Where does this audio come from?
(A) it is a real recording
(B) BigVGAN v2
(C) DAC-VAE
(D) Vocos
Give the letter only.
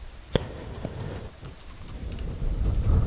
B